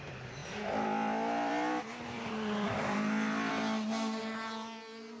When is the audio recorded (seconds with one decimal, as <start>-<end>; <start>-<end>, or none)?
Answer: 0.0-0.4; 3.5-5.2